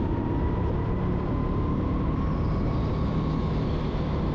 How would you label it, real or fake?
real